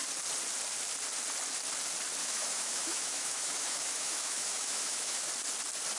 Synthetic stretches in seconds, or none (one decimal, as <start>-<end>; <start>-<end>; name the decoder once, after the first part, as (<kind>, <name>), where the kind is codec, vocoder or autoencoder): 2.2-5.3 (autoencoder, DAC-VAE)